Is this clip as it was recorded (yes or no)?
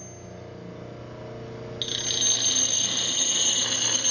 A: yes